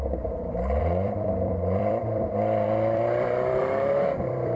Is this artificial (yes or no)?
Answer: yes